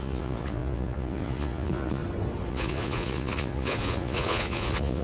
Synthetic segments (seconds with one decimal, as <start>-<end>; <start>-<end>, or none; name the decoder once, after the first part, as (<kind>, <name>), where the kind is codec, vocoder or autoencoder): 0.0-2.0 (vocoder, Vocos); 2.5-5.0